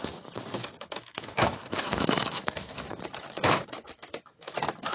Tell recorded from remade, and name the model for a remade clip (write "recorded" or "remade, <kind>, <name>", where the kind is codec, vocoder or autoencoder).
remade, autoencoder, DAC-VAE